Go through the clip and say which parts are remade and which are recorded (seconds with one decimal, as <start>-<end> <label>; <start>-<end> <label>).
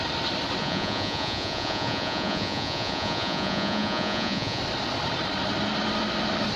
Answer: 0.0-0.6 recorded; 0.6-4.6 remade; 4.6-6.6 recorded